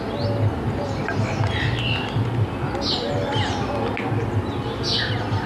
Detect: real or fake real